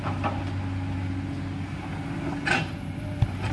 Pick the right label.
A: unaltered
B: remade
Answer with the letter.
A